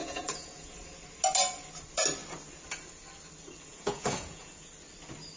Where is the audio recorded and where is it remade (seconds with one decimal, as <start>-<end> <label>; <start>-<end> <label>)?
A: 0.0-0.8 remade; 0.8-3.7 recorded; 3.7-4.7 remade; 4.7-5.4 recorded